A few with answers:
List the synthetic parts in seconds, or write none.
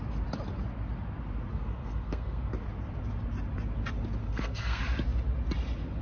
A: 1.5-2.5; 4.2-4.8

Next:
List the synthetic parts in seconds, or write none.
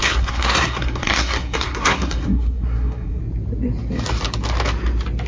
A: 0.0-3.2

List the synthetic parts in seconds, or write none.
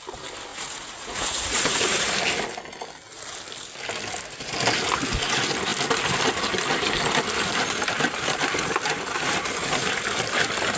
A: 0.5-2.1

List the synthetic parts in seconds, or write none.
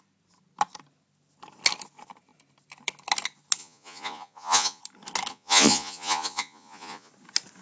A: 3.6-4.8; 5.3-7.1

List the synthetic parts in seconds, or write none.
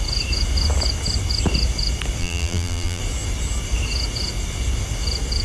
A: 2.2-3.0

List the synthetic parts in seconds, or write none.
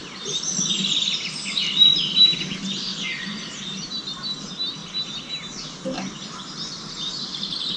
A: 2.9-3.5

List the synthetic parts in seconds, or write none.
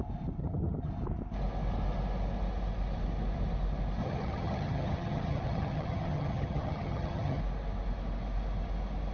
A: 0.4-0.9; 4.0-7.4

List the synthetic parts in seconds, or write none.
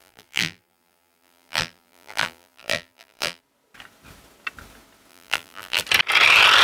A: 0.0-3.4; 5.1-5.8